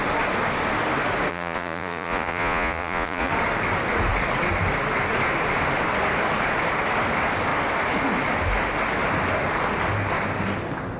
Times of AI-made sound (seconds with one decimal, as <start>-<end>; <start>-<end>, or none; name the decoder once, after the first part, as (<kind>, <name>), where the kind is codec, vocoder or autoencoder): 1.3-3.3 (vocoder, Vocos)